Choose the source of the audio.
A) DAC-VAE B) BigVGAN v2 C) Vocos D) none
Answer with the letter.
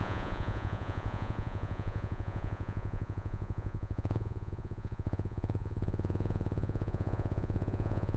C